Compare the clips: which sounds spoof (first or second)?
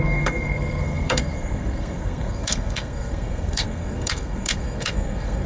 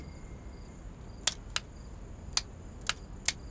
first